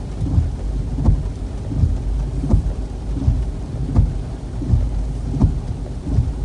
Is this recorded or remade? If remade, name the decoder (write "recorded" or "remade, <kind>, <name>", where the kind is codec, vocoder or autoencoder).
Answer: recorded